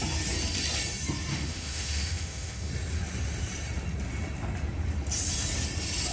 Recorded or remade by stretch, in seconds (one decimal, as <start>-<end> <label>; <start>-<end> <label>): 0.0-1.3 recorded; 1.3-2.7 remade; 2.7-6.1 recorded